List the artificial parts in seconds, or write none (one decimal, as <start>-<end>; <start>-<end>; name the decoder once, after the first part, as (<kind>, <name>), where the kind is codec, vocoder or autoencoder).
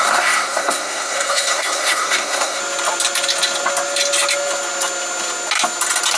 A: 0.0-2.6 (codec, SNAC)